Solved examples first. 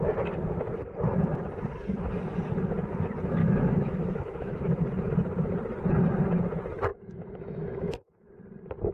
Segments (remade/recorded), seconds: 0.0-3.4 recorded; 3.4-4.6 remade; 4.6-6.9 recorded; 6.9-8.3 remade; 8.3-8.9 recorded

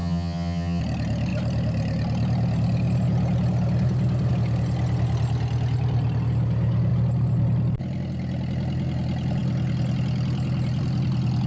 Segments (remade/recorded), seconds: 0.0-0.8 remade; 0.8-11.5 recorded

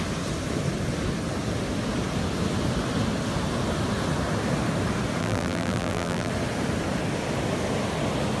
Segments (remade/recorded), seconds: 0.0-5.2 recorded; 5.2-6.3 remade; 6.3-8.4 recorded

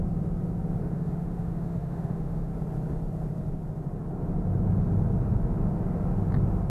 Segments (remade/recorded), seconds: 0.0-0.8 recorded; 0.8-2.5 remade; 2.5-6.7 recorded